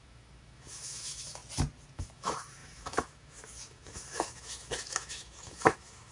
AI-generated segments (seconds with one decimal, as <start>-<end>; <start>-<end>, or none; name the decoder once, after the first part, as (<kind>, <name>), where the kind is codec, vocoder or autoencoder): 0.0-1.4 (autoencoder, DAC-VAE); 1.9-6.1